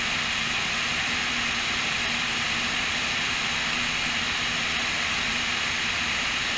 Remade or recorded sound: recorded